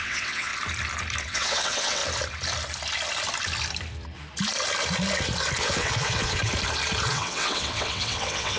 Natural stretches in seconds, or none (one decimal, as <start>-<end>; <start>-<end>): 0.5-1.2; 2.0-5.6; 6.4-7.1